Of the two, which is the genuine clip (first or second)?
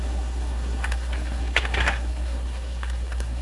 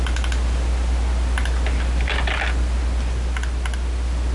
second